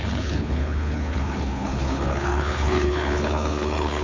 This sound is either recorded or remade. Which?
remade